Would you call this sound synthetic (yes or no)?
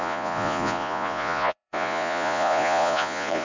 yes